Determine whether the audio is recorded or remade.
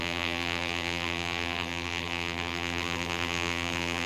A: remade